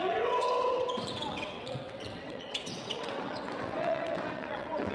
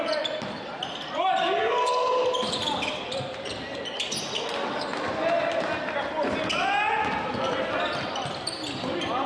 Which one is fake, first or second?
first